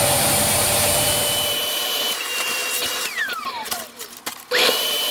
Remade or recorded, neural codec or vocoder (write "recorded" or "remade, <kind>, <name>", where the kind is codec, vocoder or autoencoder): remade, vocoder, BigVGAN v2